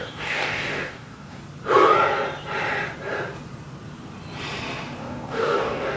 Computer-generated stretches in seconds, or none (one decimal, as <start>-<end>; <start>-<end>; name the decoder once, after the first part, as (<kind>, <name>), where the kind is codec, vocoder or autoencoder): 0.0-1.4 (codec, DAC); 5.0-6.0